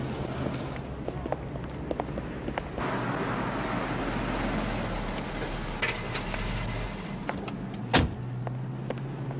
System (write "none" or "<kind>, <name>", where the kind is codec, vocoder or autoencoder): none